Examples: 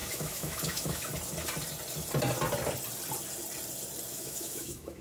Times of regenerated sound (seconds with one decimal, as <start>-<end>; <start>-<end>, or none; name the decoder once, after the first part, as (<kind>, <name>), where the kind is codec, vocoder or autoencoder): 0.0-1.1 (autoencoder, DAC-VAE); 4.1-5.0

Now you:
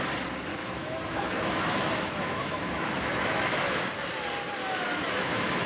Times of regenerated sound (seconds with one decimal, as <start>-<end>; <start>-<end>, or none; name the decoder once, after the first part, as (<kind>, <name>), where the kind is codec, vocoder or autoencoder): 0.5-3.9 (autoencoder, DAC-VAE); 4.6-5.7

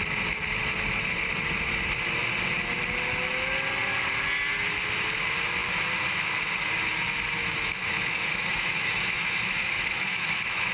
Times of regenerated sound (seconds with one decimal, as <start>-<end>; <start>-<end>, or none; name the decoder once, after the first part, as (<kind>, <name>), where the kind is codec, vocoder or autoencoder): 7.4-10.7 (autoencoder, DAC-VAE)

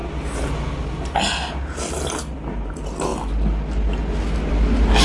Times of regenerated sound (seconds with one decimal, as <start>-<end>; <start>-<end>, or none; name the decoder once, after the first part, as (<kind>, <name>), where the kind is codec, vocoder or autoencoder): none

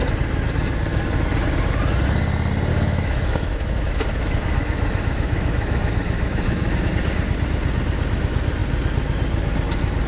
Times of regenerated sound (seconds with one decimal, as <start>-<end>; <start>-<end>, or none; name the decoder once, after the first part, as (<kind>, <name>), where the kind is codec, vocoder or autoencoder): 2.7-6.9 (autoencoder, DAC-VAE)

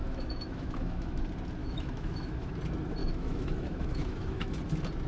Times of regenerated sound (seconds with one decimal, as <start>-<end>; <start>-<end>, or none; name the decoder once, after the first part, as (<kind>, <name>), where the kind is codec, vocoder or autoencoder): 0.0-1.2 (autoencoder, DAC-VAE); 1.6-2.5; 3.0-4.5

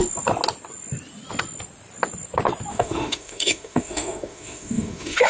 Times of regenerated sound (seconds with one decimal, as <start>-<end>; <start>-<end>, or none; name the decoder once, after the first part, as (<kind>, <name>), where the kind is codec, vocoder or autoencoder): 2.7-5.3 (autoencoder, DAC-VAE)

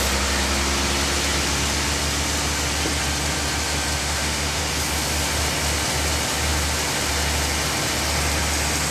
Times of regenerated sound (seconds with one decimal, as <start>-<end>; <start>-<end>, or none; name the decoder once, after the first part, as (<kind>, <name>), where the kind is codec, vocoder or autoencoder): 4.0-4.6 (autoencoder, DAC-VAE)